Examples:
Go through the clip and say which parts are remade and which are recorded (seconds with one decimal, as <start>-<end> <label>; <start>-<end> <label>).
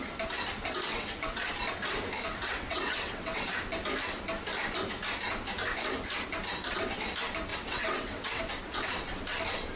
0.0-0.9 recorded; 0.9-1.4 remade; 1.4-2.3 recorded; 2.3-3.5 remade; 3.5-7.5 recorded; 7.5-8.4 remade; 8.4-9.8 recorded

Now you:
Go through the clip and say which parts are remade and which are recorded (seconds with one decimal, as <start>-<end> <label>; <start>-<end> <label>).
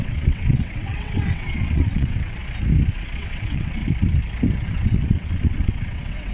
0.0-2.4 remade; 2.4-2.9 recorded; 2.9-3.8 remade; 3.8-4.7 recorded; 4.7-6.3 remade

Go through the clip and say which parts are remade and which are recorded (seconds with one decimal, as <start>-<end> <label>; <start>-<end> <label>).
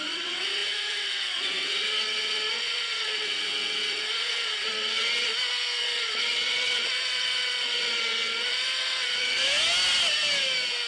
0.0-5.3 remade; 5.3-5.8 recorded; 5.8-9.4 remade; 9.4-10.9 recorded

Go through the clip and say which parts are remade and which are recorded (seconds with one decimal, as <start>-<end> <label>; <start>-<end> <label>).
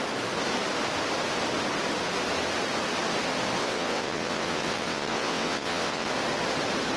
0.0-3.6 recorded; 3.6-6.1 remade; 6.1-7.0 recorded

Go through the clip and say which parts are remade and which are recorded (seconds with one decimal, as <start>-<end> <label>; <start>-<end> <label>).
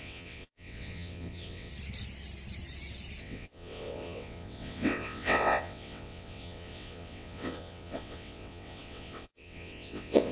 0.0-1.7 remade; 1.7-3.2 recorded; 3.2-10.3 remade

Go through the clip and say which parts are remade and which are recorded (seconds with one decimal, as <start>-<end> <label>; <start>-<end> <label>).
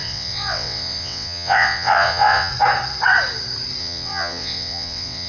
0.0-2.5 remade; 2.5-3.8 recorded; 3.8-5.3 remade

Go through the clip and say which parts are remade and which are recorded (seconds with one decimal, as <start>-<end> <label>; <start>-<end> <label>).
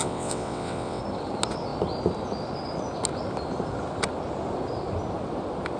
0.0-1.0 remade; 1.0-5.8 recorded